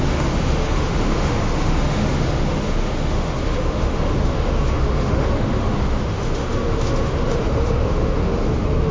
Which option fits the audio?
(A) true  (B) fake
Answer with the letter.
B